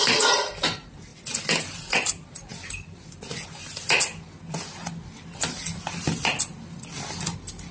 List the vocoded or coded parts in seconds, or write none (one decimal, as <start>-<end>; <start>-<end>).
none